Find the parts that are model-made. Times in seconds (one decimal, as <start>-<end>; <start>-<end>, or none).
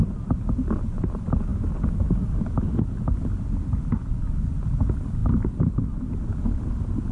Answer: none